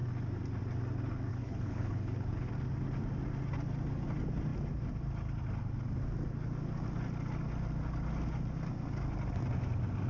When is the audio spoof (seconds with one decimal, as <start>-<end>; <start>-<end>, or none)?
1.3-2.5